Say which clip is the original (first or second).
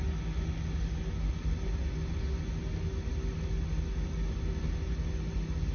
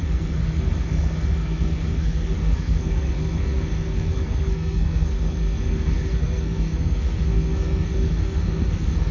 first